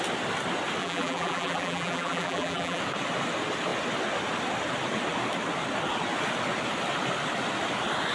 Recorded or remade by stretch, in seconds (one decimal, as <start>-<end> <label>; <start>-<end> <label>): 0.0-0.8 recorded; 0.8-2.8 remade; 2.8-8.1 recorded